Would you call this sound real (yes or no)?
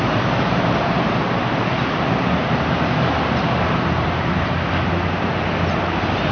yes